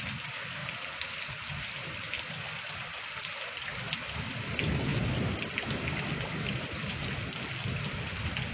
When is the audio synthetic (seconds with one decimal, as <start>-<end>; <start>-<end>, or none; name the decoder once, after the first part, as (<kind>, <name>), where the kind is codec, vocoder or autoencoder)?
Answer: none